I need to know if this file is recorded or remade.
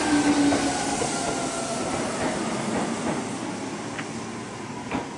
recorded